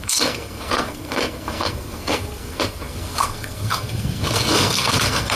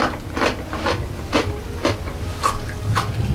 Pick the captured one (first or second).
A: second